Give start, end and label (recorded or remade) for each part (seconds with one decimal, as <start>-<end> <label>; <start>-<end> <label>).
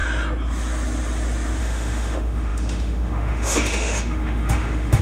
0.0-1.6 recorded; 1.6-5.0 remade